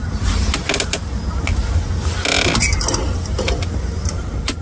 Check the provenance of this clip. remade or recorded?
recorded